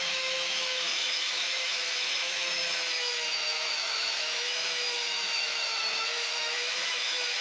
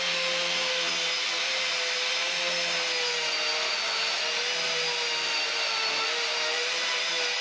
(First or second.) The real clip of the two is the second